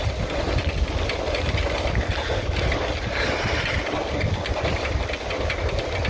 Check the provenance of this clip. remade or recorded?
recorded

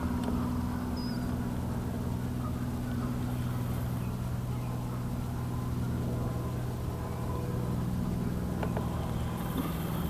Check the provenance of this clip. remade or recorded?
recorded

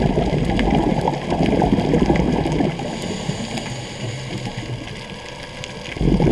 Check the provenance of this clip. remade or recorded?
recorded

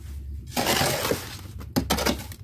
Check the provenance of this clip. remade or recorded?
recorded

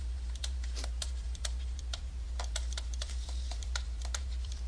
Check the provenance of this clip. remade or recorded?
remade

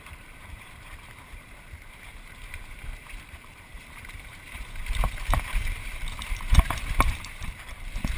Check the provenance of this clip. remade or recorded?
remade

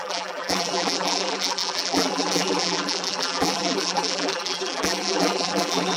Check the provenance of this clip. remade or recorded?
remade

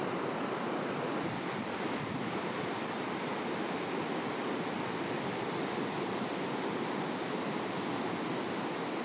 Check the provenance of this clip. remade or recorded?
recorded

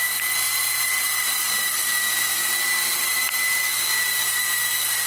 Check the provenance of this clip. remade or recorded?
recorded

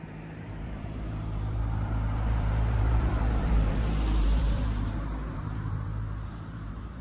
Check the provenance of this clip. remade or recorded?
remade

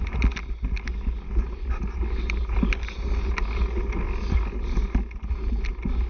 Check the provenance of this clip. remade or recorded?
recorded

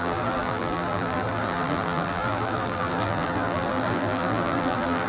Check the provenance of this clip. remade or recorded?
remade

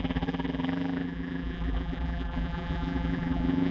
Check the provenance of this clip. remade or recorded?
remade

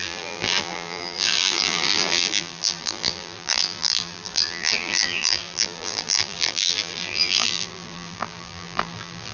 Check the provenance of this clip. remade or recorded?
remade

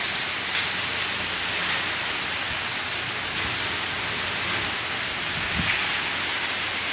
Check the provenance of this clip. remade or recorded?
recorded